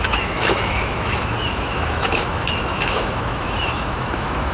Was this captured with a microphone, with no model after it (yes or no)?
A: no